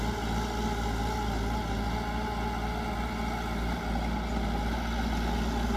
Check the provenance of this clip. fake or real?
real